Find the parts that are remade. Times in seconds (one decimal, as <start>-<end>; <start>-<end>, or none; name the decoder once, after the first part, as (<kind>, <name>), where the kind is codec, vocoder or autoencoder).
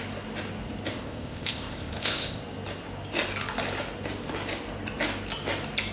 0.9-2.4 (codec, ZipCodec)